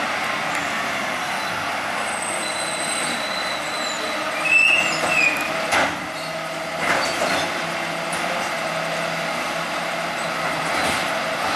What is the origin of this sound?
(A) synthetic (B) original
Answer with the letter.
B